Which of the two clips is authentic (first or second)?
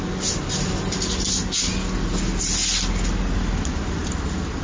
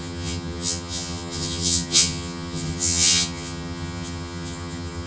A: first